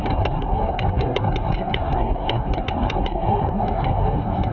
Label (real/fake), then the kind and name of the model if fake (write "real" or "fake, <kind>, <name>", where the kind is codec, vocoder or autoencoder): fake, codec, SNAC